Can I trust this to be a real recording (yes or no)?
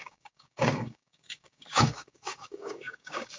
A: no